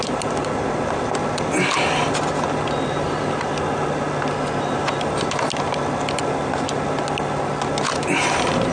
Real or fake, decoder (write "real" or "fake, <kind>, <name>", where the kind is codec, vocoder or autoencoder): real